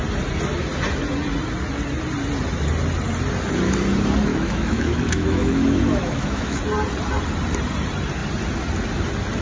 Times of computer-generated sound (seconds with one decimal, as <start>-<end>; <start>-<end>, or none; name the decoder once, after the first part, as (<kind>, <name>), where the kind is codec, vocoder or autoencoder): 4.3-6.6 (autoencoder, DAC-VAE)